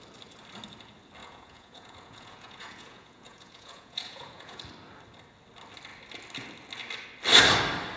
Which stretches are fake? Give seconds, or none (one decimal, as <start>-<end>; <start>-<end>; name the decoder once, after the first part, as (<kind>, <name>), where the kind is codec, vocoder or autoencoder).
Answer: 1.2-4.6 (vocoder, Vocos)